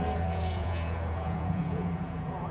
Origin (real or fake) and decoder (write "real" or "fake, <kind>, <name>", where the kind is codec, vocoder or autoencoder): fake, vocoder, Vocos